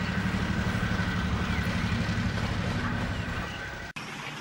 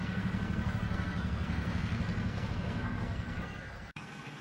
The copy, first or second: second